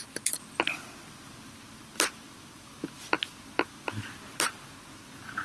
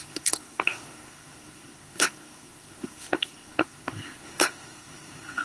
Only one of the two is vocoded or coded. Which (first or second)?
second